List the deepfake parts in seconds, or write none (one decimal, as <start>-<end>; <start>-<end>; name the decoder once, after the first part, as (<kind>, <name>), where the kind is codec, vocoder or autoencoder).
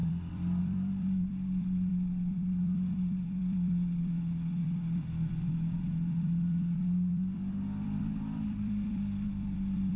0.0-10.0 (vocoder, BigVGAN v2)